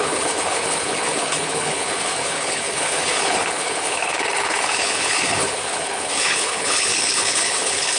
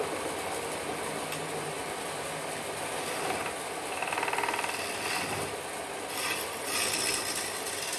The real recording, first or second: second